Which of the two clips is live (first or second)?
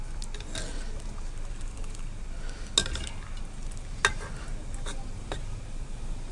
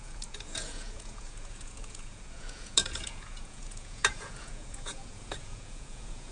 first